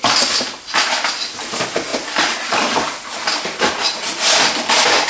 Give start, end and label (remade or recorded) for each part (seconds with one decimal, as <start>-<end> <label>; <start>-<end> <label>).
0.0-5.1 recorded